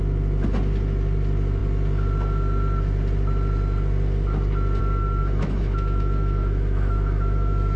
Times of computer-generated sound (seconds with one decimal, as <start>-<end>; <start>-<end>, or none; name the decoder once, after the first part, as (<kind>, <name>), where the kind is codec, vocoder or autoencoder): 5.2-7.8 (autoencoder, DAC-VAE)